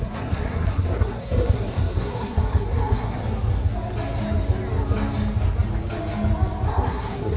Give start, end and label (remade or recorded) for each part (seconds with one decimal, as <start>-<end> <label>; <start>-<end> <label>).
0.0-3.2 remade; 3.2-6.7 recorded; 6.7-7.4 remade